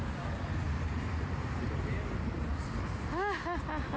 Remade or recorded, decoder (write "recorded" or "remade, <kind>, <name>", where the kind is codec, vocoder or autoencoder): recorded